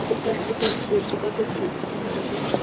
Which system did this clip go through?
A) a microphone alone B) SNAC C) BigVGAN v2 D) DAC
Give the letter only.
C